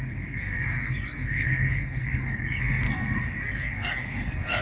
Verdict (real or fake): fake